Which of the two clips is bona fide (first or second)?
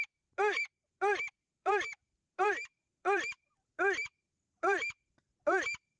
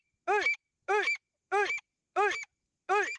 second